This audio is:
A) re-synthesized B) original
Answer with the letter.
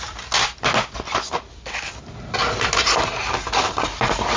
B